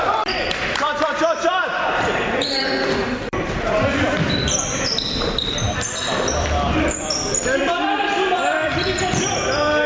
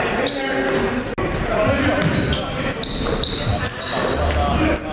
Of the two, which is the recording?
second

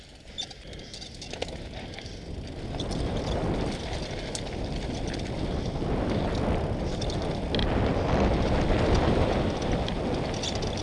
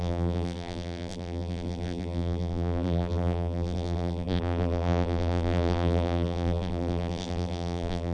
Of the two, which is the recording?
first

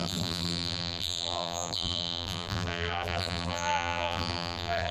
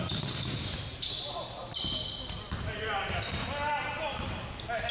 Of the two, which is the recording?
second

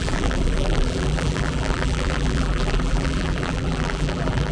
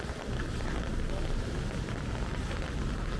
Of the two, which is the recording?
second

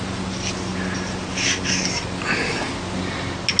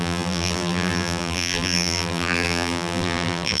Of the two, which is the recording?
first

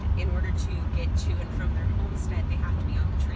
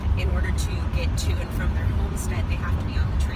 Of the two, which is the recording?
first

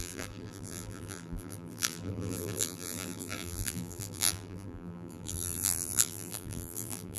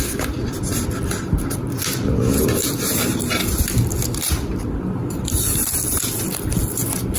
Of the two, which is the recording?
second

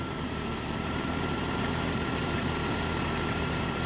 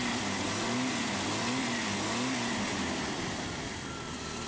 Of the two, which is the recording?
second